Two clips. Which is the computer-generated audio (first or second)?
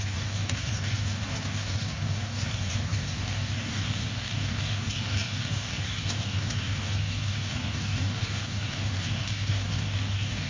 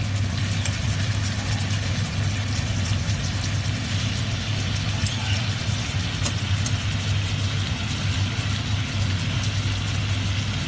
first